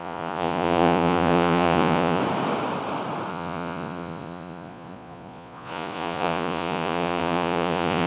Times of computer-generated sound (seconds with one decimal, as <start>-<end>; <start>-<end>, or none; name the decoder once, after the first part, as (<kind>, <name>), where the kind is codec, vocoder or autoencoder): 0.0-2.2 (vocoder, Vocos); 3.3-8.1